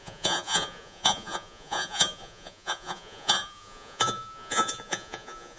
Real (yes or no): no